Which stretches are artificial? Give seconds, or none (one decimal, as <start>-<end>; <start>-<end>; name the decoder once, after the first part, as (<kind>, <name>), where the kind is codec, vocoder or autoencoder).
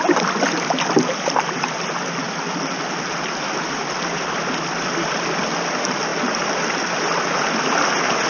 none